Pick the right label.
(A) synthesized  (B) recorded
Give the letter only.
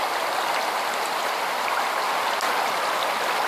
B